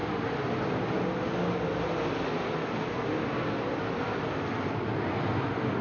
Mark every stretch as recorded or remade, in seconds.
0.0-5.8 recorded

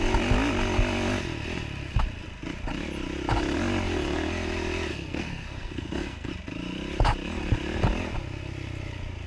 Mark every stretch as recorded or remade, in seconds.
0.0-4.9 recorded; 4.9-6.3 remade; 6.3-9.3 recorded

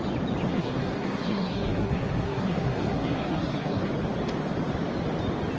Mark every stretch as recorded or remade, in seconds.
0.0-0.5 recorded; 0.5-3.9 remade; 3.9-5.6 recorded

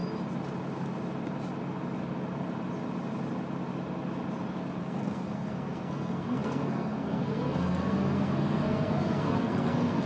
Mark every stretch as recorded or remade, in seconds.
0.0-4.8 recorded; 4.8-10.1 remade